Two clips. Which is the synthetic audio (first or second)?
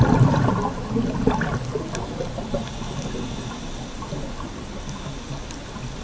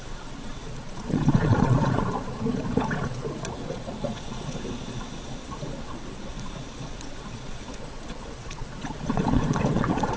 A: second